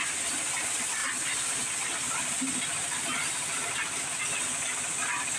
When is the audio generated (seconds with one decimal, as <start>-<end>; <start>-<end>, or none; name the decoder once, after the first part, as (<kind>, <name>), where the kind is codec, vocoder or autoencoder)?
none